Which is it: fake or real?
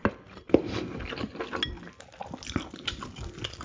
real